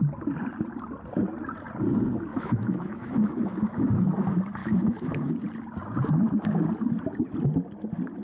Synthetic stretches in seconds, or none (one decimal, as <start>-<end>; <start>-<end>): 2.3-3.9; 4.6-5.3